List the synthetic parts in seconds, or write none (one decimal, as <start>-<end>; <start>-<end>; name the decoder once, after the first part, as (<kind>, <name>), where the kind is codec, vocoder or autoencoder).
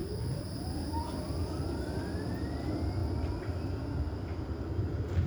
0.0-1.7 (vocoder, BigVGAN v2)